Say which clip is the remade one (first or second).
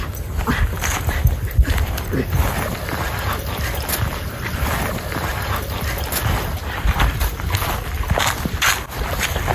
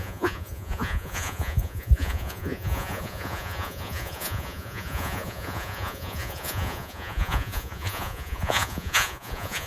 second